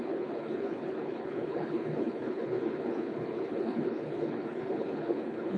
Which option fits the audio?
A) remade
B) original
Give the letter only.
A